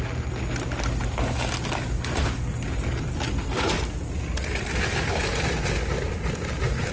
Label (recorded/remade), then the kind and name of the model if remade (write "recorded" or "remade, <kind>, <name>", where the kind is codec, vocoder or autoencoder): recorded